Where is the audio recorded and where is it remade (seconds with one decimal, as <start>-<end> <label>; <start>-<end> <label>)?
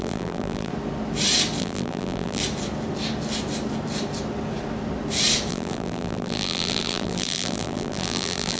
0.0-0.7 remade; 0.7-1.6 recorded; 1.6-2.4 remade; 2.4-5.5 recorded; 5.5-8.6 remade